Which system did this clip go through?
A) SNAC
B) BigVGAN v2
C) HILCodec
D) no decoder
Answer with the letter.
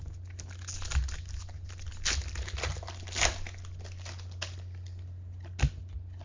D